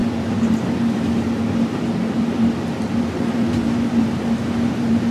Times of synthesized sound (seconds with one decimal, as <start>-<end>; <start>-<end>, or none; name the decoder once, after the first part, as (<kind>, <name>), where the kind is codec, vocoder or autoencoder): 0.0-5.1 (vocoder, BigVGAN v2)